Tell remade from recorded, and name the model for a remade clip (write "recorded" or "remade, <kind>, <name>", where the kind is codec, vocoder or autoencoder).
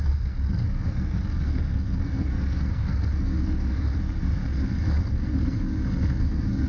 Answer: remade, codec, SNAC